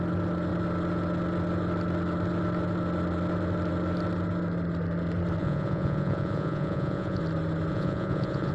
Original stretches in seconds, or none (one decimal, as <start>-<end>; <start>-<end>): 0.0-5.4; 7.2-7.7